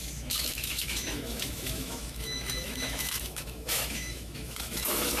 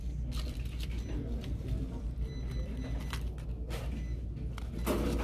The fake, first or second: first